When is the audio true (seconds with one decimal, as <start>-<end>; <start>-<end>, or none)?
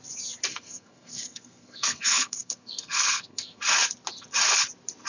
0.0-0.5; 3.6-5.1